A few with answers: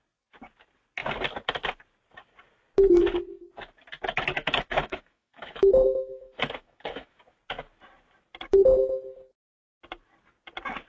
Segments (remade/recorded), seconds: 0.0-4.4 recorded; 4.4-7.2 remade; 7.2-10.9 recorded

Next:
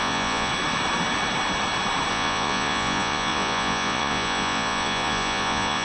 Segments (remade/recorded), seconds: 0.0-0.5 remade; 0.5-2.1 recorded; 2.1-5.8 remade

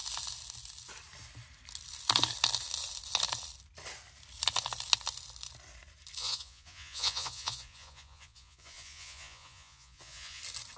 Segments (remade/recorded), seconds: 0.0-6.2 recorded; 6.2-10.4 remade; 10.4-10.8 recorded

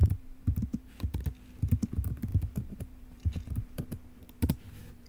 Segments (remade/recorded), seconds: 0.0-1.2 remade; 1.2-2.3 recorded; 2.3-3.8 remade; 3.8-5.1 recorded

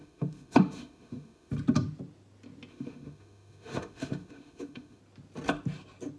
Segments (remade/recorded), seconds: 0.0-1.5 remade; 1.5-2.7 recorded; 2.7-5.0 remade; 5.0-6.2 recorded

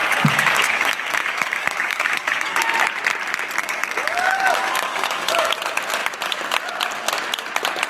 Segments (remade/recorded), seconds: 0.0-2.6 remade; 2.6-3.6 recorded; 3.6-5.5 remade; 5.5-7.9 recorded

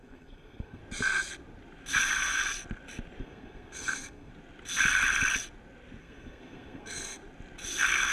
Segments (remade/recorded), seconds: 0.0-0.8 remade; 0.8-3.2 recorded; 3.2-4.3 remade; 4.3-6.0 recorded; 6.0-7.2 remade; 7.2-8.1 recorded

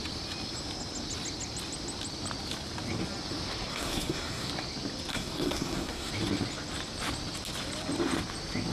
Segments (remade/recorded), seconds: 0.0-3.7 recorded; 3.7-4.5 remade; 4.5-5.1 recorded; 5.1-6.1 remade; 6.1-8.7 recorded